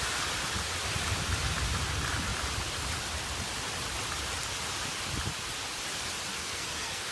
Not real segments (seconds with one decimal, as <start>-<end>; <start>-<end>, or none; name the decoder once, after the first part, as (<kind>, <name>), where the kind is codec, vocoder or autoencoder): 6.3-7.1 (codec, SNAC)